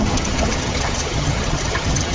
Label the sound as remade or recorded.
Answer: remade